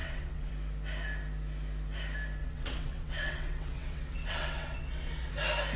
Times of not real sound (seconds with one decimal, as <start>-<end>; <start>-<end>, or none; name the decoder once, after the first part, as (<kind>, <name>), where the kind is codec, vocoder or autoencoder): 0.0-0.5 (vocoder, WaveNeXt); 2.4-5.3